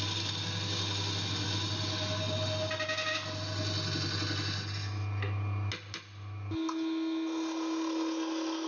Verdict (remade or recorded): recorded